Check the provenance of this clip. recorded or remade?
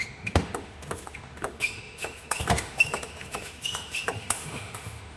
remade